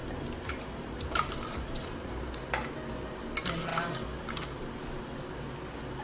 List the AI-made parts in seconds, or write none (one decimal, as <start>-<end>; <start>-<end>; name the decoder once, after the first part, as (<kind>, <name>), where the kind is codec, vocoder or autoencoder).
0.0-2.5 (vocoder, BigVGAN v2)